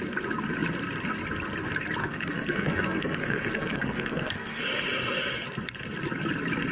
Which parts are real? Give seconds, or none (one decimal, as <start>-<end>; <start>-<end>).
0.0-2.0; 4.6-6.7